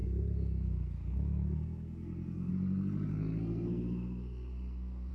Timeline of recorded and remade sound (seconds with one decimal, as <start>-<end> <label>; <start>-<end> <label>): 0.0-2.5 remade; 2.5-3.1 recorded; 3.1-5.1 remade